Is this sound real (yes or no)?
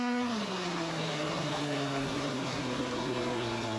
no